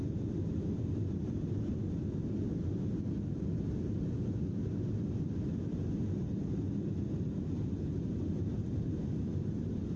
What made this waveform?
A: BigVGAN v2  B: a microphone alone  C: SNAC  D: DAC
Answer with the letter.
B